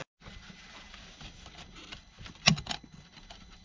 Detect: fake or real real